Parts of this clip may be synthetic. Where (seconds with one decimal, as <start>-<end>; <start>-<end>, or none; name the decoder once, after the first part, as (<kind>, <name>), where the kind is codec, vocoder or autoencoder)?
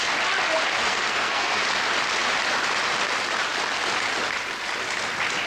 0.8-1.6 (codec, SNAC)